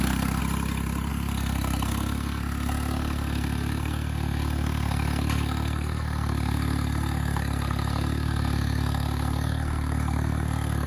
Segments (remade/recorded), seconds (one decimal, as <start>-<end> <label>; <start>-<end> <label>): 0.0-0.4 remade; 0.4-1.1 recorded; 1.1-10.9 remade